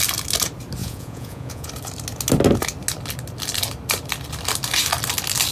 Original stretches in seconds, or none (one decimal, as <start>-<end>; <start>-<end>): 0.0-0.8; 1.7-5.5